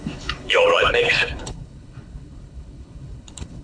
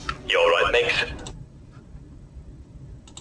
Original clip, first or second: second